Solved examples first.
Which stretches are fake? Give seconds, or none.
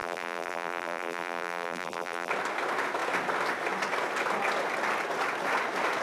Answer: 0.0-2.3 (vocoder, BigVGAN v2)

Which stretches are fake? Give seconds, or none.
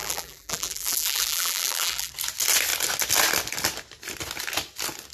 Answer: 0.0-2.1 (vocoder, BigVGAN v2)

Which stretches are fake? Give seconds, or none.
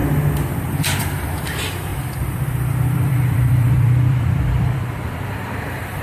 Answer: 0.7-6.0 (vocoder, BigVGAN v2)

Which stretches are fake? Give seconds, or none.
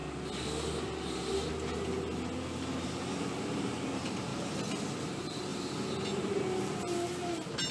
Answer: 3.2-4.3 (vocoder, BigVGAN v2); 5.0-5.5; 6.3-7.7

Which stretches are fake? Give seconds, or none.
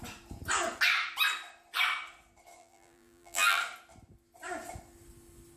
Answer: 2.6-3.6 (vocoder, BigVGAN v2)